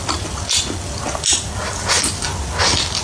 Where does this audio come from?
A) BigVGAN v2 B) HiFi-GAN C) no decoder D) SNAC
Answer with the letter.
C